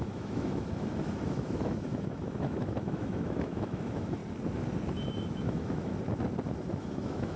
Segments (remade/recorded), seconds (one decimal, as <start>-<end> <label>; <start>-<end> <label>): 0.0-4.2 remade; 4.2-5.1 recorded; 5.1-5.9 remade; 5.9-6.8 recorded; 6.8-7.4 remade